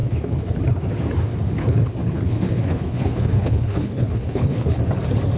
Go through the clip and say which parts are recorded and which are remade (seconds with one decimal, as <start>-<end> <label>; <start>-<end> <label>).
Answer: 0.0-0.6 remade; 0.6-1.6 recorded; 1.6-4.8 remade; 4.8-5.4 recorded